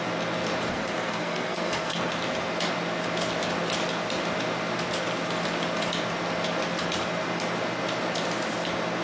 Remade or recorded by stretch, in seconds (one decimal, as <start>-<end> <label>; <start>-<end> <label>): 0.0-0.7 recorded; 0.7-2.1 remade; 2.1-9.0 recorded